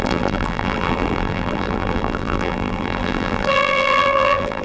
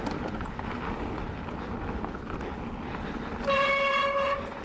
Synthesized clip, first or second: first